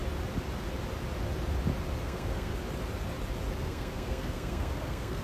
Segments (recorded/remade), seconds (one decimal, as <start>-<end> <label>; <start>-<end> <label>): 0.0-2.0 recorded; 2.0-2.5 remade; 2.5-3.6 recorded; 3.6-5.2 remade